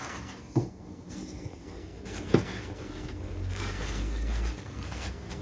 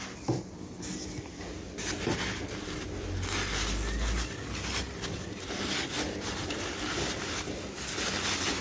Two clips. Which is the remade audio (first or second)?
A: first